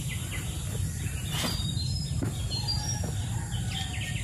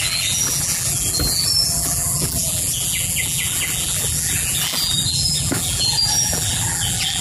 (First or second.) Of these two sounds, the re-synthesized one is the second